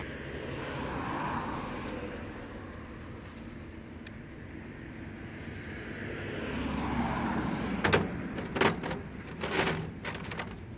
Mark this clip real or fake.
real